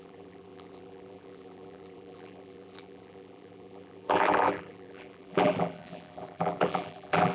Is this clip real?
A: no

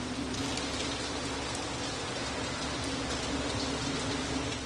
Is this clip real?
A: yes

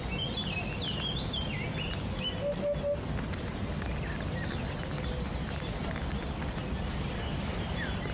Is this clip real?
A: yes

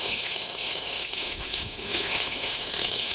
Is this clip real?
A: no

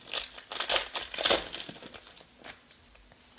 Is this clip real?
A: yes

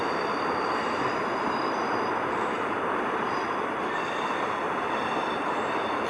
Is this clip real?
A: no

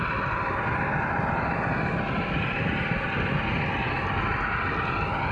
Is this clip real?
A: yes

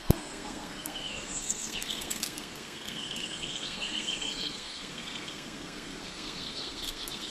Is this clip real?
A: no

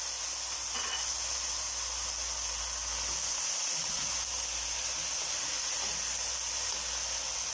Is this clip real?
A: yes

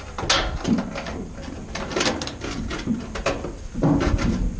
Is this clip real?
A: yes